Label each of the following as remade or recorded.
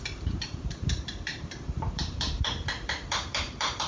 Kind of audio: remade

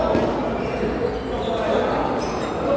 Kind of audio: recorded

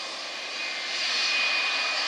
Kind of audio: recorded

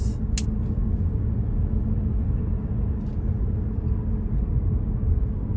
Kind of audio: recorded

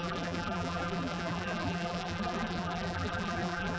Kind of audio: remade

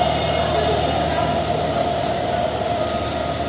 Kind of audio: recorded